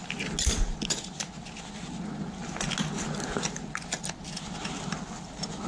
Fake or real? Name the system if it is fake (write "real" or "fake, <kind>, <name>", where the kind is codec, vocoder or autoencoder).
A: real